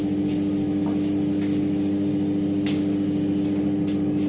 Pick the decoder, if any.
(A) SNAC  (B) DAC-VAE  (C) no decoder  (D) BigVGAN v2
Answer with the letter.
C